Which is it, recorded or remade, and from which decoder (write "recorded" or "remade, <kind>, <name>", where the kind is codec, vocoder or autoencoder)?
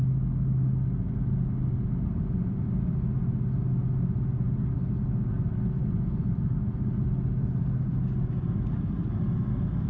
recorded